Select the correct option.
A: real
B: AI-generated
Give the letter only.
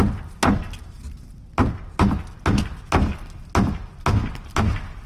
A